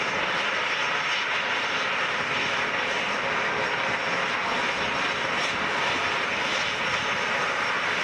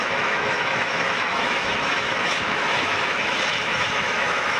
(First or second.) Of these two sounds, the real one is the first